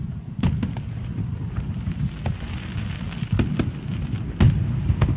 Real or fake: real